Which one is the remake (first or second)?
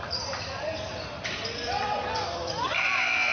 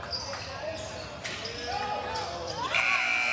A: first